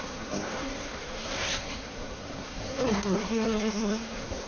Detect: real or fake fake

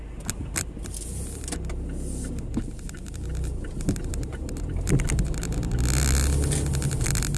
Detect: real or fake real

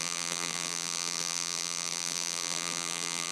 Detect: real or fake fake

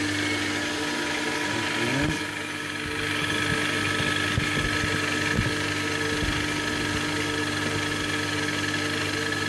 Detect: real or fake real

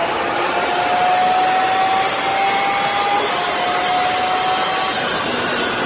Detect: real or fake real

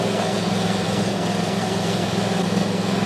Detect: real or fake fake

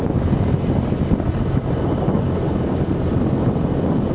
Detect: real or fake real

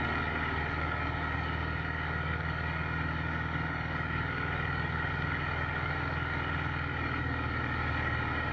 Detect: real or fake fake